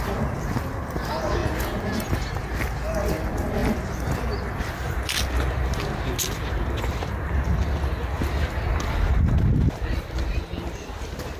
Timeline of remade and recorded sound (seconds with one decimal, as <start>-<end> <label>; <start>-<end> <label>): 0.0-11.4 recorded

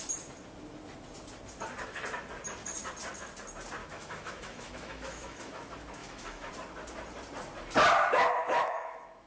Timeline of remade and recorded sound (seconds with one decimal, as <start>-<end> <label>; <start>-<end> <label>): 0.0-3.8 recorded; 3.8-5.5 remade; 5.5-6.0 recorded; 6.0-6.5 remade; 6.5-8.4 recorded; 8.4-9.3 remade

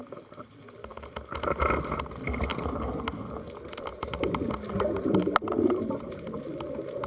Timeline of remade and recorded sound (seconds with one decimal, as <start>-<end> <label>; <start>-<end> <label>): 0.0-7.1 recorded

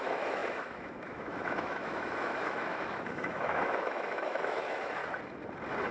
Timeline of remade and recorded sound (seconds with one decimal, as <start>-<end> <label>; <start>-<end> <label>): 0.0-5.0 remade; 5.0-5.9 recorded

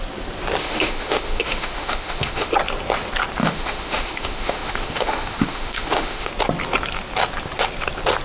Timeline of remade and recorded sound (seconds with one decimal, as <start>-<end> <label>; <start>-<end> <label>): 0.0-0.6 recorded; 0.6-2.5 remade; 2.5-3.4 recorded; 3.4-6.3 remade; 6.3-8.2 recorded

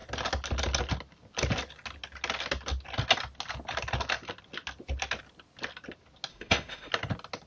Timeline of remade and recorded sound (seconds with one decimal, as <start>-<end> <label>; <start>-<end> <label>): 0.0-6.3 recorded; 6.3-6.9 remade; 6.9-7.5 recorded

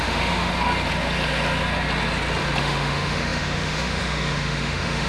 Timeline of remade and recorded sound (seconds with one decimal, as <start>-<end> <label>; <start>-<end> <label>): 0.0-0.5 remade; 0.5-2.6 recorded; 2.6-5.1 remade